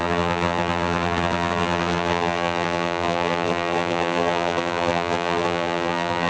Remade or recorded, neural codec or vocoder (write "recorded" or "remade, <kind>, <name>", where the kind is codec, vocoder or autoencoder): remade, vocoder, BigVGAN v2